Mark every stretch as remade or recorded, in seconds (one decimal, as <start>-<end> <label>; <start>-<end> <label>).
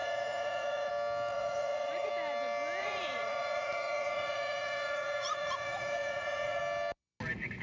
0.0-0.9 remade; 0.9-1.3 recorded; 1.3-2.1 remade; 2.1-2.8 recorded; 2.8-6.6 remade; 6.6-7.6 recorded